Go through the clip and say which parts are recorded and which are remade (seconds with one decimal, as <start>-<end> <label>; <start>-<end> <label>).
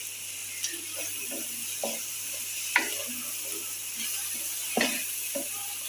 0.0-5.9 recorded